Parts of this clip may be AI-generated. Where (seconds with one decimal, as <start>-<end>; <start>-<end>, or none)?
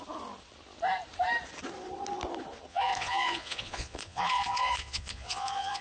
2.7-5.8